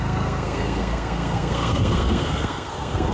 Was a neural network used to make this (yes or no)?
yes